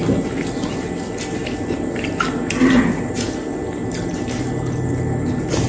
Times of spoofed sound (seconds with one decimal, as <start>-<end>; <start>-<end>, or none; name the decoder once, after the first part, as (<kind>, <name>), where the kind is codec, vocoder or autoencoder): none

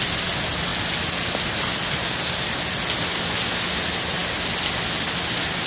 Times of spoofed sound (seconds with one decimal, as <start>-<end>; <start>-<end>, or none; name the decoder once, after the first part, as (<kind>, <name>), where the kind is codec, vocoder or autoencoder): none

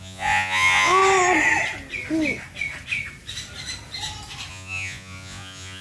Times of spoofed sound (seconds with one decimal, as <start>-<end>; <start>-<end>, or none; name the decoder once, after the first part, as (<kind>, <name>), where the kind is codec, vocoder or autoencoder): 0.0-1.0 (vocoder, Vocos); 4.5-5.8

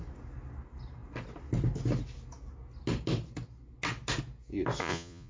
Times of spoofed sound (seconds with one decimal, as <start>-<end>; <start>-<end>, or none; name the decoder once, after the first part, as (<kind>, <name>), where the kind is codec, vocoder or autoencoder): 4.8-5.3 (vocoder, Vocos)

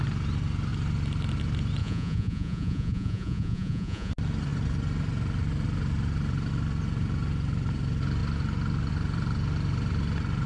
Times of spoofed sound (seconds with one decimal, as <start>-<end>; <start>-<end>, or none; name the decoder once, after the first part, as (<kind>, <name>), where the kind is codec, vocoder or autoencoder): 1.8-4.1 (vocoder, Vocos)

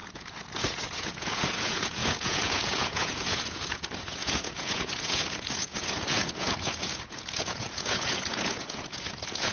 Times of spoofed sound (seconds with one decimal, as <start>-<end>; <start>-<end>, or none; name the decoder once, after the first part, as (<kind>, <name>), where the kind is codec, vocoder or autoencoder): 0.0-9.5 (vocoder, Vocos)

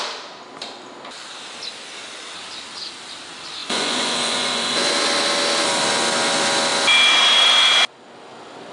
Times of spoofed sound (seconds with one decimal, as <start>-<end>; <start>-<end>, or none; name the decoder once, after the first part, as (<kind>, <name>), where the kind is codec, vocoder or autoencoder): 3.6-4.9 (vocoder, Vocos)

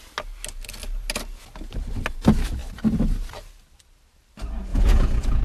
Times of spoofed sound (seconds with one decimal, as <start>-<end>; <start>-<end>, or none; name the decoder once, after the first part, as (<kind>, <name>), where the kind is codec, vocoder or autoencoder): 4.7-5.4 (vocoder, Vocos)